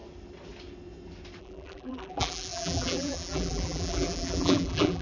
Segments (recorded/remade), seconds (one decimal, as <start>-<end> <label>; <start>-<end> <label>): 0.0-1.4 recorded; 1.4-5.0 remade